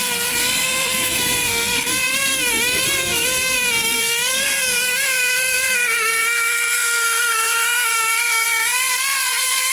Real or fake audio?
fake